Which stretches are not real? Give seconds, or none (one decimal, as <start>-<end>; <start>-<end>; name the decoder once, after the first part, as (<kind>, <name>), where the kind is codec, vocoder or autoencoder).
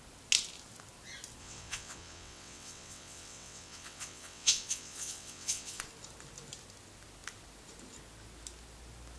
1.4-5.8 (vocoder, WaveNeXt)